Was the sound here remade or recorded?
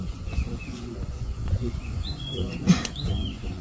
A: remade